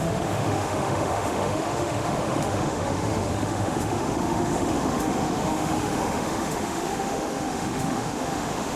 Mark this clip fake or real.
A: fake